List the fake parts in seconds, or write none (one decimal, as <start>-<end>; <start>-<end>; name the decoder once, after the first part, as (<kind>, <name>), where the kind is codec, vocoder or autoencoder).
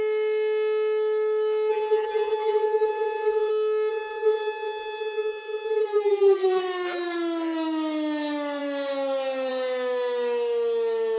1.7-3.5 (vocoder, BigVGAN v2); 3.9-6.6